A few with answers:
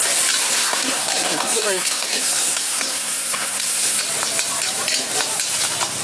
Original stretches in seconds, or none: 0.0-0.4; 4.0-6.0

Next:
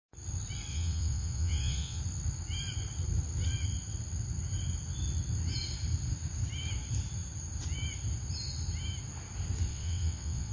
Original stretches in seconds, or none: 0.0-0.7; 2.0-9.7